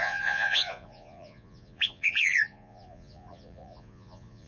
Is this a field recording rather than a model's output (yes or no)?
no